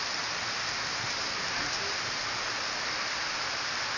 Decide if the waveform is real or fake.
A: real